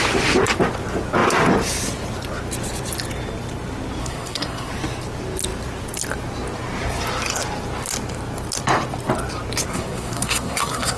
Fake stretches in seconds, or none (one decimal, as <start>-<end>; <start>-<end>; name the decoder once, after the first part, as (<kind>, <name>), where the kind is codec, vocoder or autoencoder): 4.0-4.7 (codec, SNAC); 9.7-11.0